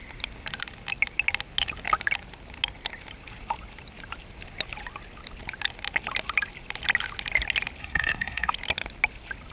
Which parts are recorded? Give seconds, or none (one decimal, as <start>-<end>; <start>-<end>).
0.0-7.8; 8.5-9.5